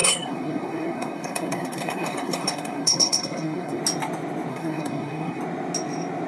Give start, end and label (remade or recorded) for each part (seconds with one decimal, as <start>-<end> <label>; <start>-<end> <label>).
0.0-3.8 remade; 3.8-4.5 recorded; 4.5-5.4 remade; 5.4-6.3 recorded

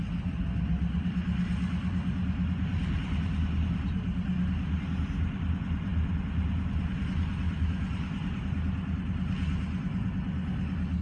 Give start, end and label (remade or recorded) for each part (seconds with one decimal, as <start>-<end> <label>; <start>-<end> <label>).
0.0-11.0 recorded

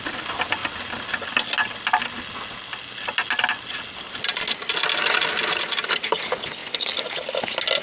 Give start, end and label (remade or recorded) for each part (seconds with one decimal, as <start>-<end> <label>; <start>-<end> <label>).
0.0-7.8 recorded